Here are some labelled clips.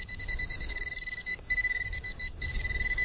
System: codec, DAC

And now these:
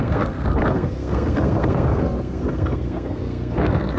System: codec, SNAC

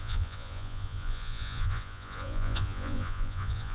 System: vocoder, Vocos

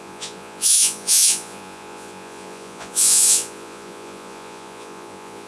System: vocoder, Vocos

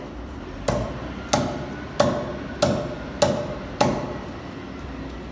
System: none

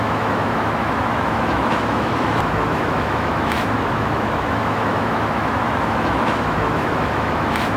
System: autoencoder, DAC-VAE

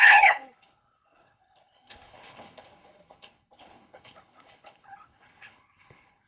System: codec, HILCodec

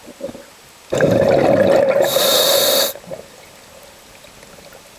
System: none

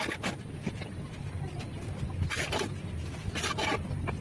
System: none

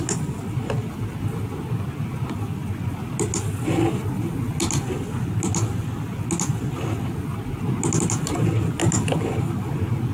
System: none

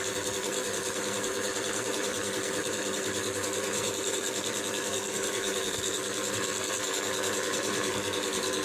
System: codec, SNAC